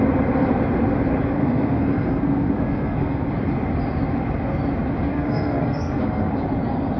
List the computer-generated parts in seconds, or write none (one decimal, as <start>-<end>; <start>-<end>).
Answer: 1.4-3.3; 5.1-6.3